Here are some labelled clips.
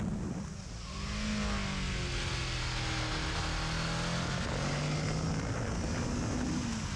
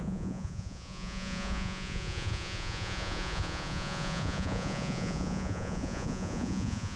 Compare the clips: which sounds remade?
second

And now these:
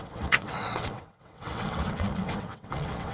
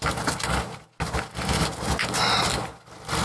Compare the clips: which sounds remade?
first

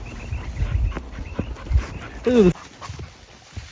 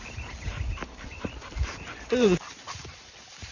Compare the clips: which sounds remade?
second